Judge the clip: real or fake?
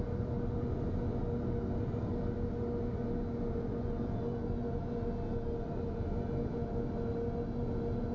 real